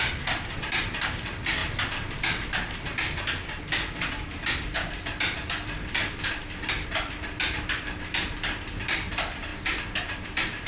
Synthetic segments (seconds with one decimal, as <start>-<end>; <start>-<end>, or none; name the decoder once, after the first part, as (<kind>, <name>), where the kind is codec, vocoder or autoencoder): 0.0-9.5 (vocoder, BigVGAN v2); 10.2-10.7